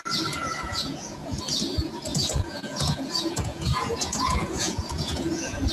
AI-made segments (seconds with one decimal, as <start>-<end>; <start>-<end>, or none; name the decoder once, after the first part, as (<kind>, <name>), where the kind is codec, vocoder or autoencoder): 0.4-1.4 (vocoder, Vocos); 2.1-5.7